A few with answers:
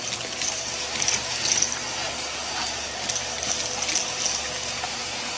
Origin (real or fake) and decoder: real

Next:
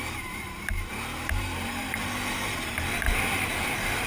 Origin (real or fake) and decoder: fake, vocoder, BigVGAN v2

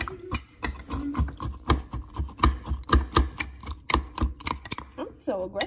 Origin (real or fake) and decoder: real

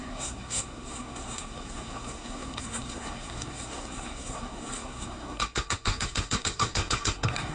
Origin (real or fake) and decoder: fake, codec, SNAC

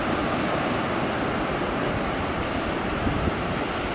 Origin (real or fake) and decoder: real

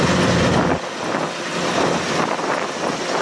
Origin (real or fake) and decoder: real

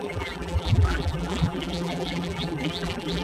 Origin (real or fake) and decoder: fake, vocoder, BigVGAN v2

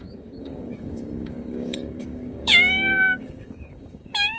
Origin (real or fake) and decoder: fake, codec, DAC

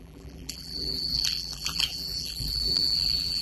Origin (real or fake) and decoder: fake, vocoder, BigVGAN v2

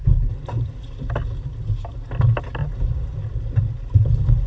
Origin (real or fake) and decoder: real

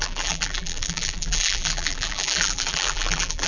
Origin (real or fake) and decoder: fake, vocoder, BigVGAN v2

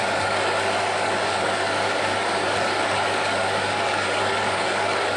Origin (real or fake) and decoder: fake, codec, DAC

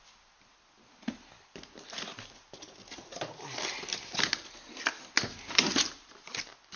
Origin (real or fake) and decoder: real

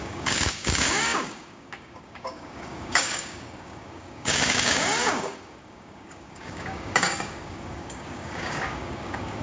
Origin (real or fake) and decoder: fake, codec, DAC